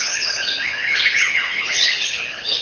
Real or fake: fake